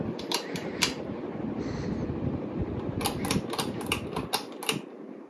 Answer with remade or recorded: recorded